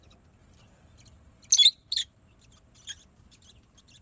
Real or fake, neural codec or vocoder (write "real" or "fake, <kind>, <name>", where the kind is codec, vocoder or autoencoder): real